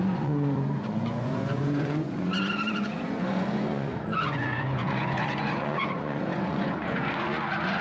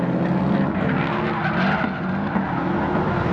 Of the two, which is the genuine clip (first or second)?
second